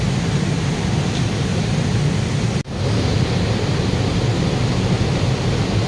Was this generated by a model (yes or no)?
no